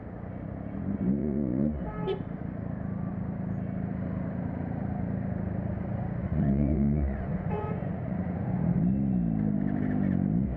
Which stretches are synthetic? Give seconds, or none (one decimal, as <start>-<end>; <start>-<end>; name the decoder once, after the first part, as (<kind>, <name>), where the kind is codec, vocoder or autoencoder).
1.2-1.8 (vocoder, Vocos); 6.2-8.6